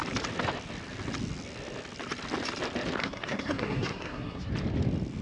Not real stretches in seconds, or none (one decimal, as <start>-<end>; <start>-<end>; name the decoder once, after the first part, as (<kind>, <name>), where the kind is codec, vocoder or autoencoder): 3.0-4.5 (codec, SNAC)